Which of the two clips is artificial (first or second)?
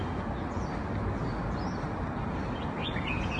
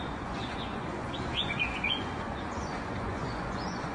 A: second